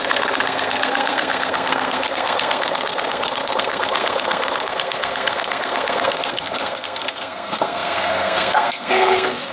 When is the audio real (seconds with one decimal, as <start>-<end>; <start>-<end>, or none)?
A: none